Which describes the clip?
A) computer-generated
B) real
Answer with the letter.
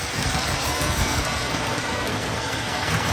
A